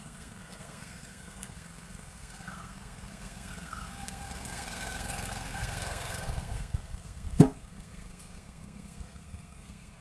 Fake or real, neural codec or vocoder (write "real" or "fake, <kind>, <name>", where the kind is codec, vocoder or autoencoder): fake, codec, SNAC